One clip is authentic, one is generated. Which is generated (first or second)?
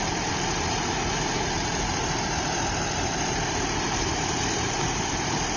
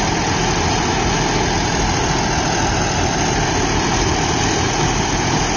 first